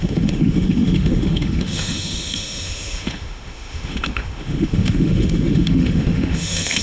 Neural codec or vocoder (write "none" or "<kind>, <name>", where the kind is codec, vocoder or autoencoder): autoencoder, DAC-VAE